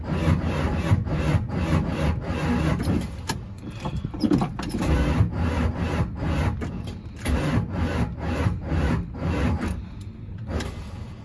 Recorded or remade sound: recorded